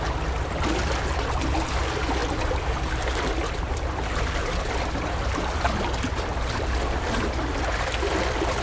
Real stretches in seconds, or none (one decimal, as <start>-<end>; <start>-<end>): 0.0-8.6